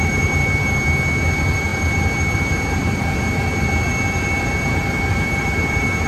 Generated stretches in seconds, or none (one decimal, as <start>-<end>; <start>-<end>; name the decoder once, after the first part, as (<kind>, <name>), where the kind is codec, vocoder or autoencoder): 0.0-6.1 (vocoder, BigVGAN v2)